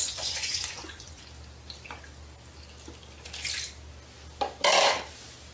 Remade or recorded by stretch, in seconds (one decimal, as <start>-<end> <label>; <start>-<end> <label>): 0.0-1.2 remade; 1.2-5.5 recorded